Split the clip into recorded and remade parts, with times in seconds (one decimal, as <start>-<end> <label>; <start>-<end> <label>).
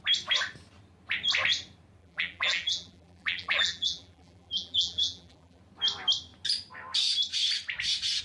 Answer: 0.0-2.0 recorded; 2.0-5.6 remade; 5.6-8.2 recorded